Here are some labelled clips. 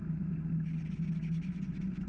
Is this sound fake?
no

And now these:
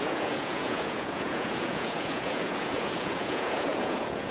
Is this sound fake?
yes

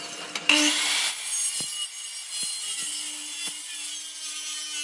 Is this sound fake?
no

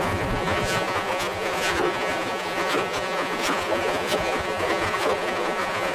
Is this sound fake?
yes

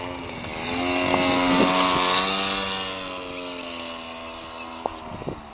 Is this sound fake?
no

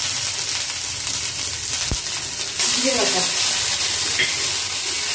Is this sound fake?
no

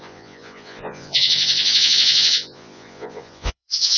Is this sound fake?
yes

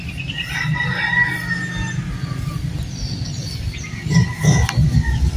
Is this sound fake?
no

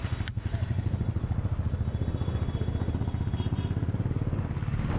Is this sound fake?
no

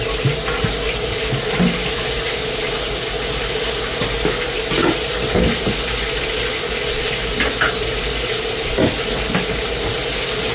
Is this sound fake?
no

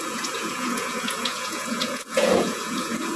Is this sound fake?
yes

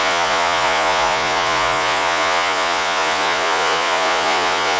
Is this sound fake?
yes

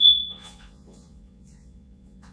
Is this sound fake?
yes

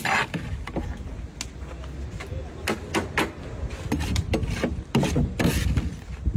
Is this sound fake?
no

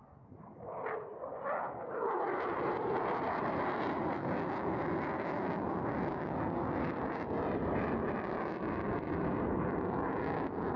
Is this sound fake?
no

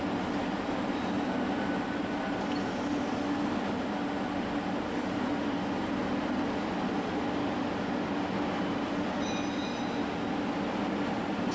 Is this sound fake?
no